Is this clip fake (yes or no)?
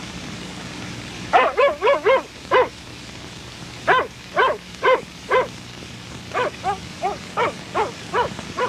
yes